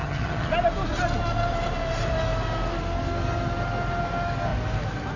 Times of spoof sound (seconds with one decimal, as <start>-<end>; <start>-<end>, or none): 0.0-0.5